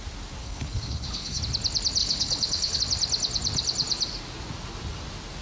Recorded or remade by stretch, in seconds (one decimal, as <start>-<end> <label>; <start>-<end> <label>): 0.0-0.4 recorded; 0.4-1.4 remade; 1.4-2.0 recorded; 2.0-2.8 remade; 2.8-5.4 recorded